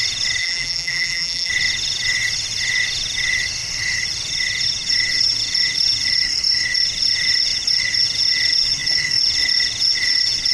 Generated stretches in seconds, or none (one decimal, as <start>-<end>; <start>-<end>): 0.4-1.5